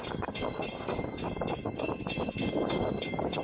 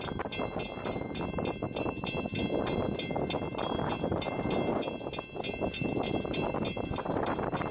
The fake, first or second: first